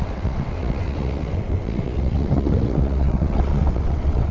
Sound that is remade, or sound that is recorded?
remade